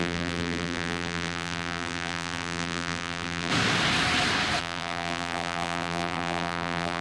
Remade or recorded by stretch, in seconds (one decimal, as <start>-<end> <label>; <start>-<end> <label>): 0.0-3.5 remade; 3.5-4.6 recorded; 4.6-7.0 remade